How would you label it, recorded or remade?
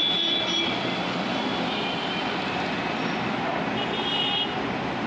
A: recorded